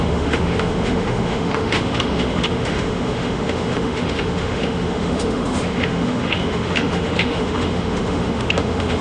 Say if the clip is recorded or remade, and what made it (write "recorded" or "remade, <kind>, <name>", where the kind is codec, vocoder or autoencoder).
remade, autoencoder, DAC-VAE